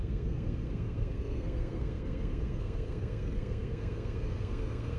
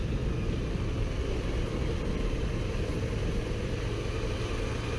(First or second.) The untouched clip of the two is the second